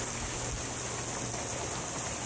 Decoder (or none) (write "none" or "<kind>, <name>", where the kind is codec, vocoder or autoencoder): none